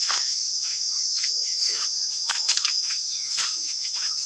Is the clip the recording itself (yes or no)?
no